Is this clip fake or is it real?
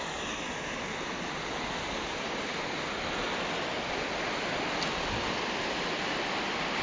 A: real